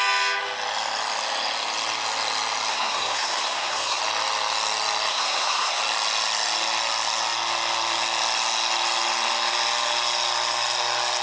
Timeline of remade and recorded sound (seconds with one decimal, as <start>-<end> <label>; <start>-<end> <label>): 0.0-2.7 recorded; 2.7-4.0 remade; 4.0-5.1 recorded; 5.1-5.8 remade; 5.8-11.2 recorded